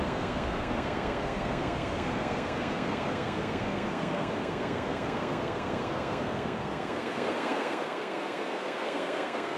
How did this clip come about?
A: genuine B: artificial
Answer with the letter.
B